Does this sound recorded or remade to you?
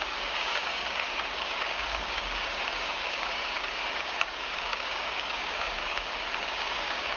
remade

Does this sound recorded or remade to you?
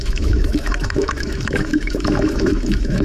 remade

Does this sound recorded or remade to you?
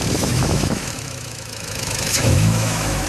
remade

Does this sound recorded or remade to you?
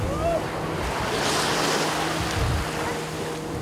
recorded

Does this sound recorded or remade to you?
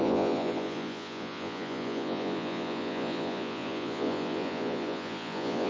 remade